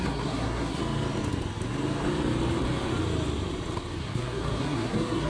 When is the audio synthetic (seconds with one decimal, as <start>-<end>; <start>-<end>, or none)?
0.0-0.8; 4.0-5.3